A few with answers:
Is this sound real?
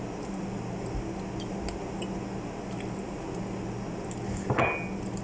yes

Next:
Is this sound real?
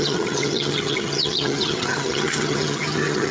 no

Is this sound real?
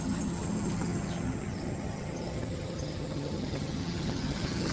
no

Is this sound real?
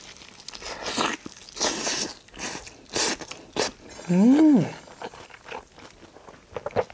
yes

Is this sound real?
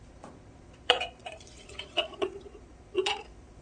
no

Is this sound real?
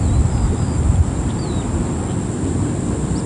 yes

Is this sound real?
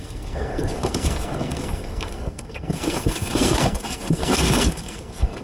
no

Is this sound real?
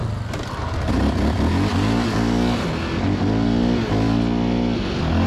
yes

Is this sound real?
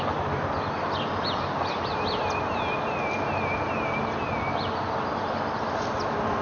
yes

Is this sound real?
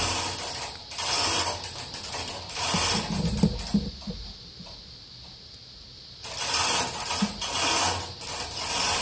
yes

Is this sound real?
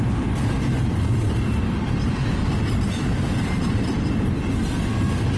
yes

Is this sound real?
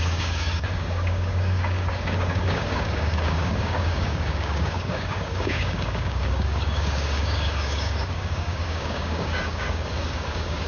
no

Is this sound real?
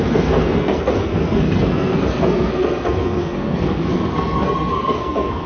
no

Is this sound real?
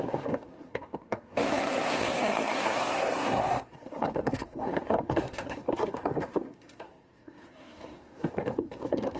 no